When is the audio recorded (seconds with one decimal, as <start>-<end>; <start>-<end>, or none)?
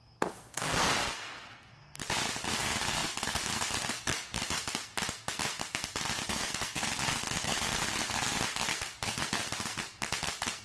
2.0-2.5